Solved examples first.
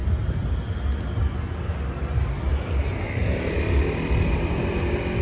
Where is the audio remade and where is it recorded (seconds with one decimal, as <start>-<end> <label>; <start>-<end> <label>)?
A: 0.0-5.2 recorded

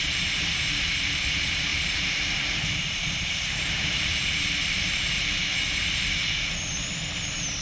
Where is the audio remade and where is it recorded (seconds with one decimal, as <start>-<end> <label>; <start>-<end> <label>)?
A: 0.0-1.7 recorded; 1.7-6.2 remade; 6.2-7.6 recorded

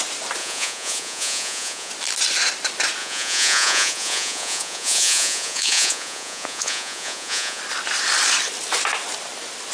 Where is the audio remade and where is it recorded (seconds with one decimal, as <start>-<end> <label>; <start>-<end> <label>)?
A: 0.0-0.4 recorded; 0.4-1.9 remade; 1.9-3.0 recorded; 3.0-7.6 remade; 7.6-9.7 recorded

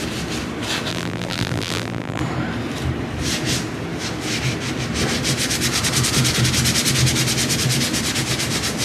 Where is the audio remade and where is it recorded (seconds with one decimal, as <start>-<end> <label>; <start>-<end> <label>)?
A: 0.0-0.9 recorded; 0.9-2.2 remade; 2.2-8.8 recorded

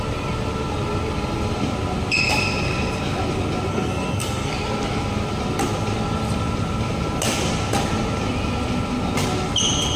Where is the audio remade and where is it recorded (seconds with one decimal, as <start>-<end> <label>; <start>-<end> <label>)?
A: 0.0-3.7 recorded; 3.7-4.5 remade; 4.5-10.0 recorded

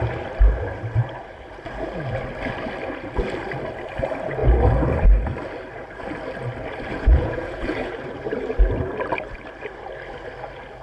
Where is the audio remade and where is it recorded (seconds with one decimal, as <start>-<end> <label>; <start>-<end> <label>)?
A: 0.0-6.9 recorded; 6.9-7.9 remade; 7.9-10.8 recorded

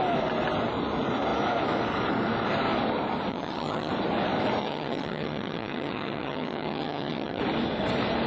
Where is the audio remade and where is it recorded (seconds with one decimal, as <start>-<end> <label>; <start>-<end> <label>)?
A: 0.0-3.3 recorded; 3.3-3.9 remade; 3.9-4.6 recorded; 4.6-7.4 remade; 7.4-8.3 recorded

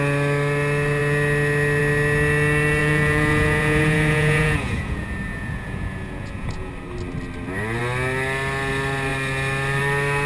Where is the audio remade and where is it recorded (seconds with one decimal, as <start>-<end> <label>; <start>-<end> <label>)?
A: 0.0-2.8 recorded; 2.8-6.7 remade; 6.7-10.3 recorded